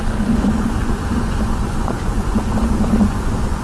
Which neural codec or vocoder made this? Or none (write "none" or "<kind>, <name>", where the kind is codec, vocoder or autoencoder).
vocoder, Vocos